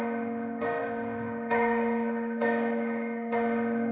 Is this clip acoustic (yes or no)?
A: no